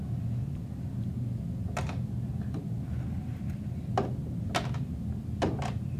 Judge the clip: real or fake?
real